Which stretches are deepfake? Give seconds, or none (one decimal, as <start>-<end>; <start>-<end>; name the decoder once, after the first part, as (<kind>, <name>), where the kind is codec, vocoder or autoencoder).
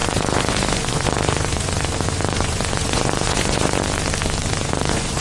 0.0-3.8 (vocoder, Vocos); 4.5-5.2